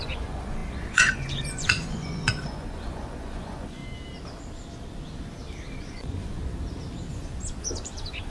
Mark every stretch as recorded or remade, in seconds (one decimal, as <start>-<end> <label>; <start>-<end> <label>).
0.0-3.8 remade; 3.8-5.8 recorded; 5.8-6.4 remade; 6.4-7.1 recorded; 7.1-8.3 remade